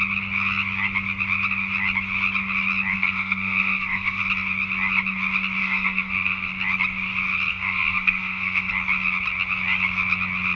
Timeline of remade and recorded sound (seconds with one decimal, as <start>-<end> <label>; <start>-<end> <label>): 0.0-2.9 recorded; 2.9-4.2 remade; 4.2-5.6 recorded; 5.6-6.5 remade; 6.5-7.5 recorded; 7.5-8.7 remade; 8.7-10.5 recorded